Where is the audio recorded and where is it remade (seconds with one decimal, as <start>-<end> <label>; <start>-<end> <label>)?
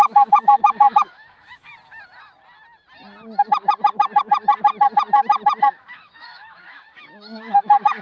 0.0-1.7 remade; 1.7-5.6 recorded; 5.6-8.0 remade